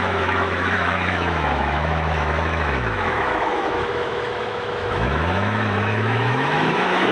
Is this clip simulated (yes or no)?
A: yes